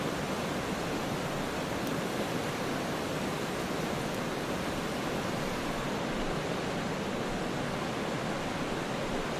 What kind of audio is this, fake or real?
real